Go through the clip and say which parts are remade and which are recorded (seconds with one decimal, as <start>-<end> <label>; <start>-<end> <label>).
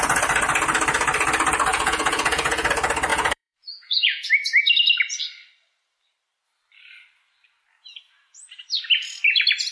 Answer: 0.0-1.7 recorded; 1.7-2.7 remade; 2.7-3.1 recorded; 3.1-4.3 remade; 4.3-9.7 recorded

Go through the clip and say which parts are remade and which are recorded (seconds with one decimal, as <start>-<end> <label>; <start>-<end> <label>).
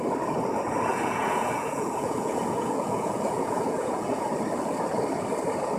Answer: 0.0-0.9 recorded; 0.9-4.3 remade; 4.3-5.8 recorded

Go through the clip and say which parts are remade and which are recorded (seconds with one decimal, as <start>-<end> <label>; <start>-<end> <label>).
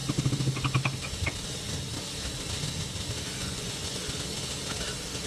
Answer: 0.0-3.4 recorded; 3.4-4.0 remade; 4.0-5.3 recorded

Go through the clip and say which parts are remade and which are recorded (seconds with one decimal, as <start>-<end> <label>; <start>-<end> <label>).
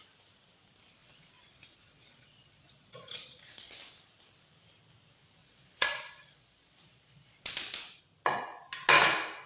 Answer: 0.0-1.0 recorded; 1.0-3.8 remade; 3.8-5.4 recorded; 5.4-7.4 remade; 7.4-9.5 recorded